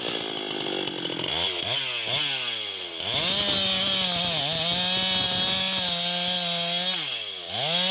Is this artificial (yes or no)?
no